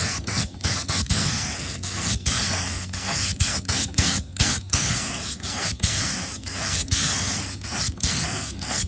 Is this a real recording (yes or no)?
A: no